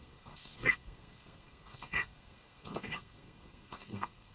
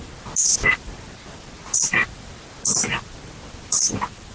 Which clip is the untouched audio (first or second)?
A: second